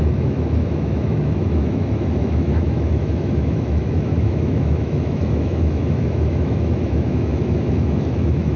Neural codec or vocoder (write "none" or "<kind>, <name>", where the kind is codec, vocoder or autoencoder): autoencoder, DAC-VAE